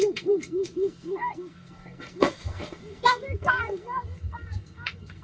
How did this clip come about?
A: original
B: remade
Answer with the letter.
B